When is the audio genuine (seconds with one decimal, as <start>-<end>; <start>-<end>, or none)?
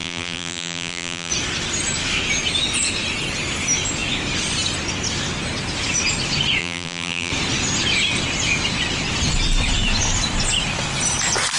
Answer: 1.3-6.6; 7.3-11.6